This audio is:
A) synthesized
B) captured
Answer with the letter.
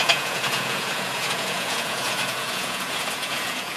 A